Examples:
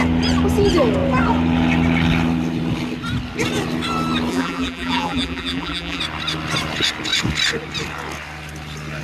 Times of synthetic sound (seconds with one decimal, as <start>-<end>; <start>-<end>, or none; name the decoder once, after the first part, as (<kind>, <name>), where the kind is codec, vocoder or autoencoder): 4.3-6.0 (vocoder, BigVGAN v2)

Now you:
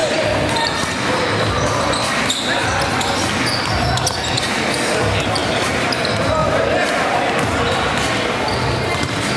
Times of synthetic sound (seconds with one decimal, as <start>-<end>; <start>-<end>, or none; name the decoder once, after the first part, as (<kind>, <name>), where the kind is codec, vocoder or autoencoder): 5.4-6.0 (vocoder, BigVGAN v2); 6.4-7.6

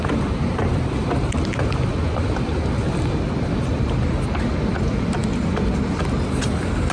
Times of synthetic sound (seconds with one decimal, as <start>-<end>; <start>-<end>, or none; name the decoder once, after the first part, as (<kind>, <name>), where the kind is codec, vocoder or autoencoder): 0.0-6.9 (vocoder, BigVGAN v2)

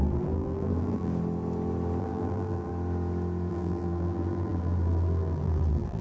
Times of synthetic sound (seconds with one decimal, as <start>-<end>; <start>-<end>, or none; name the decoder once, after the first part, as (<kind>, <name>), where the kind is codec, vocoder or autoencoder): 0.0-1.1 (vocoder, BigVGAN v2); 2.0-2.7; 3.5-6.0

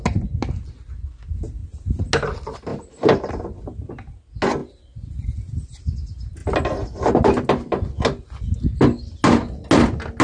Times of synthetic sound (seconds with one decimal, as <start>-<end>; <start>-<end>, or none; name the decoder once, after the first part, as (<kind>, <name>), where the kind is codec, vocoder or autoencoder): 1.6-2.1 (vocoder, BigVGAN v2); 2.7-3.3; 4.6-5.8